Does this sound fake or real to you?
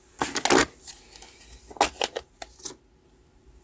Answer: real